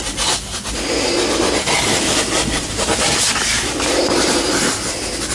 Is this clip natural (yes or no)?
yes